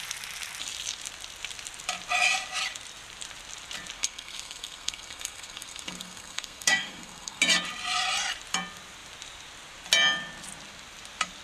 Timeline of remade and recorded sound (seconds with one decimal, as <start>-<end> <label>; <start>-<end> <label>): 0.0-4.0 recorded; 4.0-7.4 remade; 7.4-11.4 recorded